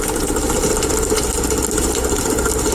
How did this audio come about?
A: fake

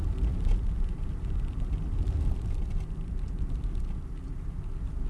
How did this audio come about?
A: real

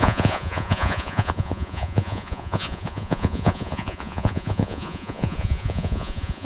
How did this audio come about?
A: fake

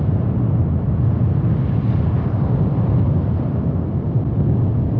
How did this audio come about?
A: real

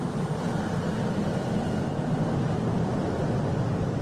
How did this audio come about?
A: real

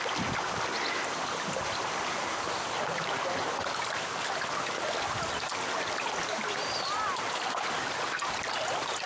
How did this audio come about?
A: real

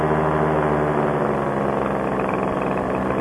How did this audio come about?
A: real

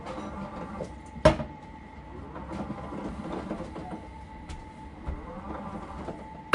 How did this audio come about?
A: real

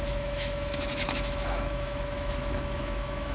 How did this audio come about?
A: fake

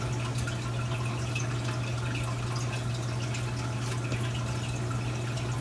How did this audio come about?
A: real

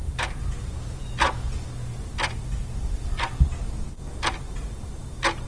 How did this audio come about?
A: real